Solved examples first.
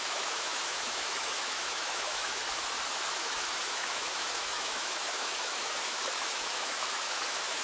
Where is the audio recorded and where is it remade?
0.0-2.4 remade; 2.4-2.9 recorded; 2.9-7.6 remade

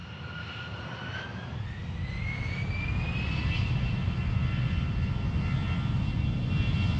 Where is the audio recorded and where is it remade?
0.0-7.0 recorded

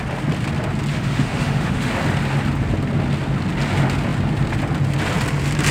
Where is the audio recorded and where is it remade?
0.0-0.9 recorded; 0.9-1.9 remade; 1.9-5.7 recorded

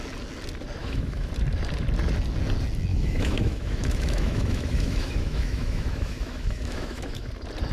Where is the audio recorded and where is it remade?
0.0-0.8 recorded; 0.8-1.3 remade; 1.3-2.9 recorded; 2.9-7.3 remade; 7.3-7.7 recorded

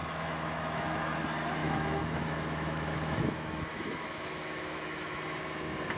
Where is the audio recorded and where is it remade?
0.0-1.2 remade; 1.2-1.6 recorded; 1.6-5.2 remade; 5.2-6.0 recorded

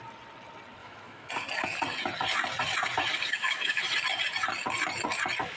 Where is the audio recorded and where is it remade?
0.0-0.8 recorded; 0.8-1.3 remade; 1.3-3.3 recorded; 3.3-3.8 remade; 3.8-5.6 recorded

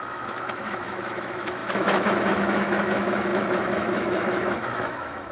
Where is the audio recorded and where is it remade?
0.0-5.3 remade

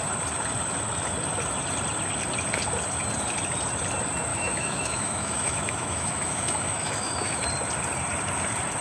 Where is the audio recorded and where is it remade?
0.0-4.3 recorded; 4.3-7.4 remade; 7.4-8.8 recorded